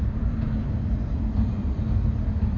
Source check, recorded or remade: recorded